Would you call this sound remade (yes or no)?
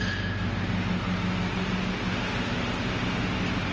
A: no